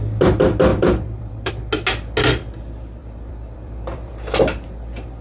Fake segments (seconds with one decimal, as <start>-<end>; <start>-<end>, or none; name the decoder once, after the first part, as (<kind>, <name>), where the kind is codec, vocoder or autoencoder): 0.7-1.5 (vocoder, BigVGAN v2); 3.0-4.4